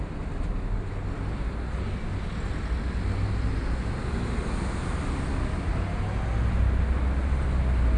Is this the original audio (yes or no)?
yes